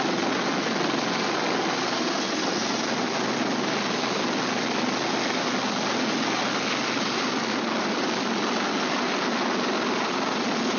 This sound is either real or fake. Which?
real